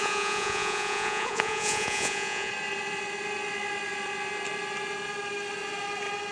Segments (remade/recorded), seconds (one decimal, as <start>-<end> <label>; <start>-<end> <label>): 0.0-2.5 remade; 2.5-6.3 recorded